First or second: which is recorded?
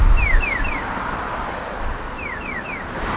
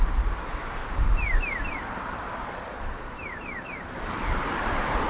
first